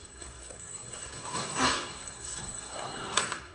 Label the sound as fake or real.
fake